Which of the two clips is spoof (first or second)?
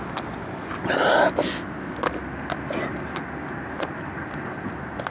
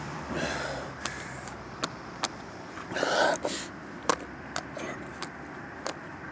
second